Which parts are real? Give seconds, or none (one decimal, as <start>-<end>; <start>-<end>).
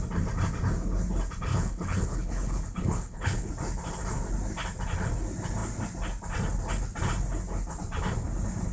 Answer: 0.0-1.5; 3.5-8.7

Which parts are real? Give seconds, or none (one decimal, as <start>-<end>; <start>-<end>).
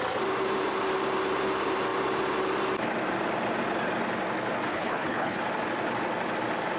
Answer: 0.0-4.7; 5.4-6.8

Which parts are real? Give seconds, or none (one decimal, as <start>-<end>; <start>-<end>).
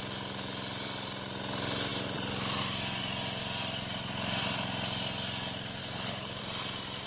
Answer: 0.0-5.8; 6.4-7.1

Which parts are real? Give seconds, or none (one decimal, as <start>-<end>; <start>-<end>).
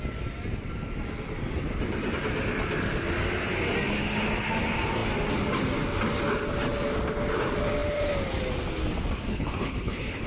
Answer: 0.0-9.3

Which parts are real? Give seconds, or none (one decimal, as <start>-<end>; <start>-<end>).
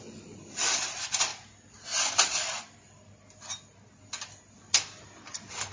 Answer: 0.0-5.7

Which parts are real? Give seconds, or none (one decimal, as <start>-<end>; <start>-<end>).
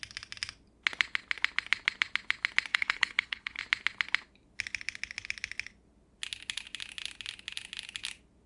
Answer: 0.0-2.7; 3.6-8.5